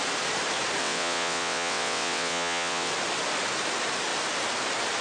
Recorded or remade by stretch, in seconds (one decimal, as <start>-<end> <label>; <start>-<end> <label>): 0.0-0.8 recorded; 0.8-2.9 remade; 2.9-5.0 recorded